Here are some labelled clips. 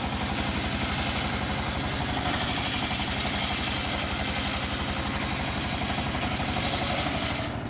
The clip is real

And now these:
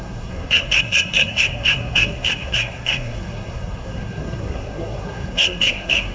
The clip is fake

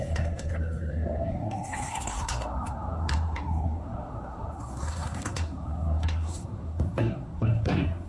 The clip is fake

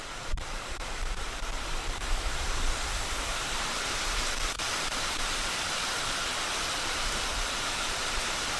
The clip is fake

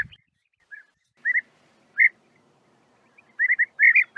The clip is real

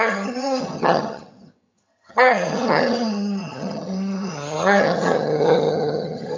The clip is fake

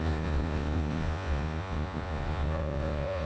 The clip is fake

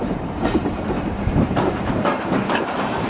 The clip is fake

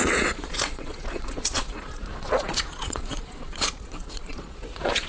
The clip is fake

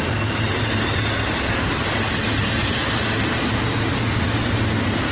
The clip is real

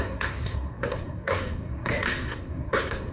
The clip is fake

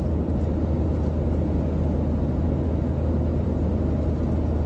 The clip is real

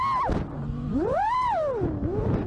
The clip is real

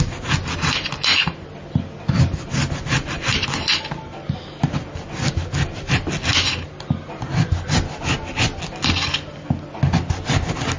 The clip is real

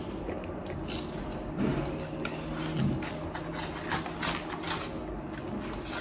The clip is real